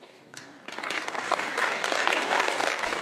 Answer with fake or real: fake